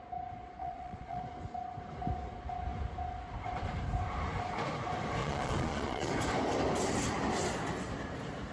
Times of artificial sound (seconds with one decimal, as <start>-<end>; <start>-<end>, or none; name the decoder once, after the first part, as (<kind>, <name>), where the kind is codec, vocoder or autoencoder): 0.6-1.2 (vocoder, Vocos); 5.2-6.1